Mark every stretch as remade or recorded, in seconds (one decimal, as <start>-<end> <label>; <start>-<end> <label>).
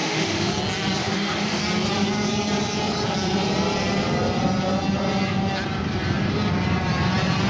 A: 0.0-0.5 remade; 0.5-1.0 recorded; 1.0-1.6 remade; 1.6-7.5 recorded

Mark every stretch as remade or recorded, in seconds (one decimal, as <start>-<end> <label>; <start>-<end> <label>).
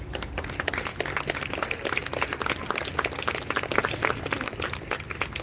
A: 0.0-5.4 recorded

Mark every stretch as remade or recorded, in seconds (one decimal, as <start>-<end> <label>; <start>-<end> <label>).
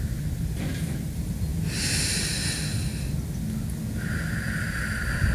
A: 0.0-5.3 recorded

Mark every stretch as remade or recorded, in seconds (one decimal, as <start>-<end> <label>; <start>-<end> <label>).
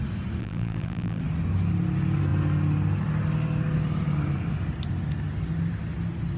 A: 0.0-0.4 recorded; 0.4-1.2 remade; 1.2-6.4 recorded